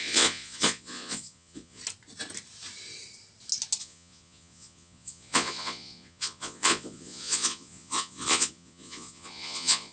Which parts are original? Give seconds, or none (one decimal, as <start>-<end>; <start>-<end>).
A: 1.8-3.8